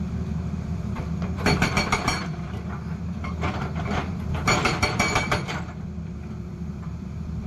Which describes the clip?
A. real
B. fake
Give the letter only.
B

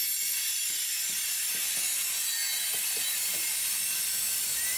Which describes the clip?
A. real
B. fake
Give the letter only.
A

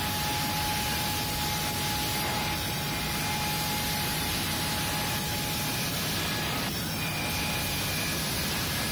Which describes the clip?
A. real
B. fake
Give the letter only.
A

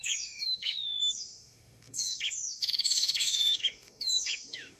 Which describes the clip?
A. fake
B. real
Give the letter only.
A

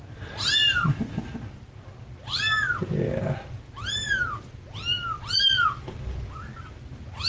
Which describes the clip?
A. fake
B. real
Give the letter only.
B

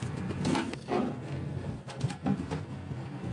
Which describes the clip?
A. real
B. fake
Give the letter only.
B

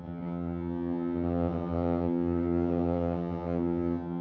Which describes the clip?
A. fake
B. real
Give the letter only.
A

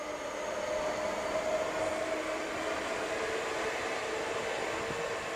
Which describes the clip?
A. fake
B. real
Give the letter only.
B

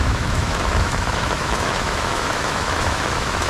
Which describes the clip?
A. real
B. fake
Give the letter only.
B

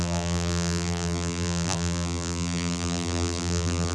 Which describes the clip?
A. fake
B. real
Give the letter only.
A